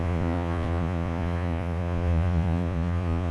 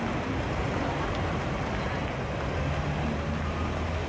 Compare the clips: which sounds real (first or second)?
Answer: second